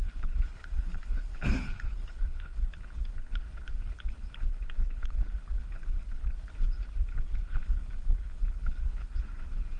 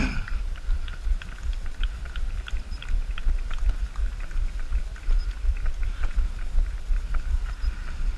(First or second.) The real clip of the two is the second